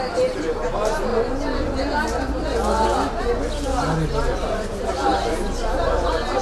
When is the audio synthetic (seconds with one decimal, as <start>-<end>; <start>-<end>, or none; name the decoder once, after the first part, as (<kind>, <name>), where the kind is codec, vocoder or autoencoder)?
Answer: none